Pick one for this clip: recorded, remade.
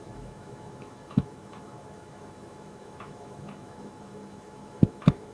remade